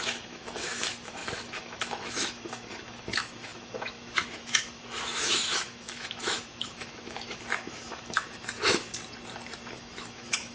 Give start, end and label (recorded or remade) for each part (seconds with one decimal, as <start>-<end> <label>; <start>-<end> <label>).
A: 0.0-8.9 remade; 8.9-9.7 recorded; 9.7-10.5 remade